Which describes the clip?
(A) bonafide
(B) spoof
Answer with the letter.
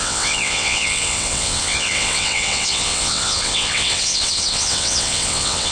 B